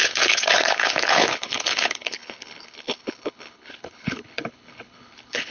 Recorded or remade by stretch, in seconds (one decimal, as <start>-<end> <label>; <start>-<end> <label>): 0.0-5.5 remade